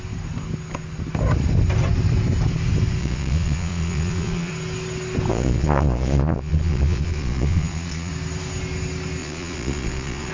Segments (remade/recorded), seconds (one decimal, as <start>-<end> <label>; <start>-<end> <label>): 0.0-3.0 recorded; 3.0-4.5 remade; 4.5-5.3 recorded; 5.3-8.1 remade; 8.1-9.2 recorded; 9.2-10.3 remade